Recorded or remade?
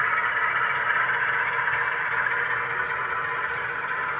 recorded